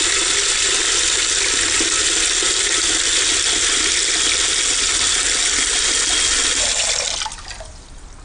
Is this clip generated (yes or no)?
no